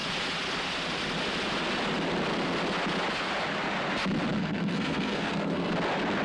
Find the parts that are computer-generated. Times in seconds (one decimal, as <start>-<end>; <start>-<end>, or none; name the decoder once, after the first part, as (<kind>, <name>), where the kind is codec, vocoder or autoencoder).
4.4-5.7 (codec, SNAC)